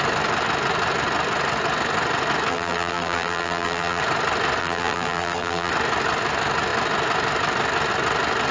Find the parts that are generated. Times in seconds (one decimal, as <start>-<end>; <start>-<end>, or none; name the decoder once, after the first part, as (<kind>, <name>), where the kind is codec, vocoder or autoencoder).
2.5-4.0 (vocoder, BigVGAN v2); 4.6-5.7